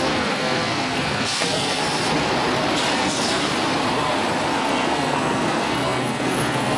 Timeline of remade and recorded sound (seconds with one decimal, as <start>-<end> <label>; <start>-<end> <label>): 0.0-1.8 remade; 1.8-2.9 recorded; 2.9-3.5 remade; 3.5-4.6 recorded; 4.6-6.8 remade